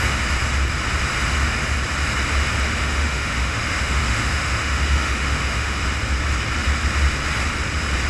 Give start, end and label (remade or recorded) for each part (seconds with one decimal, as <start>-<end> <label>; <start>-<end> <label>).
0.0-2.8 recorded; 2.8-5.8 remade; 5.8-8.1 recorded